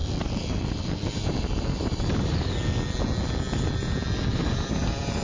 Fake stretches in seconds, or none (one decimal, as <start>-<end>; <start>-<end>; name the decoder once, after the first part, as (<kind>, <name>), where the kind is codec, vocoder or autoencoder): 0.0-2.5 (vocoder, BigVGAN v2); 4.3-5.2